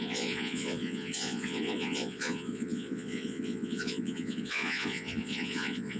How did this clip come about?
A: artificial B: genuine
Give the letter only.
A